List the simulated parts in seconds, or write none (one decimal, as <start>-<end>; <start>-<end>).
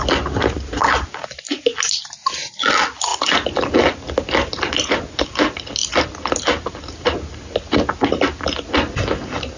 none